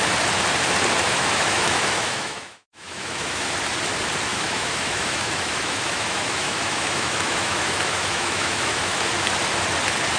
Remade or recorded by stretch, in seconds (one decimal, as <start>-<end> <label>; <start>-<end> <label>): 0.0-1.1 recorded; 1.1-3.5 remade; 3.5-4.3 recorded; 4.3-9.1 remade; 9.1-10.2 recorded